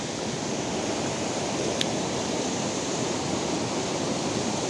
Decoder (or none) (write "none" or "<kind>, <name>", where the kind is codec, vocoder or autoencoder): vocoder, BigVGAN v2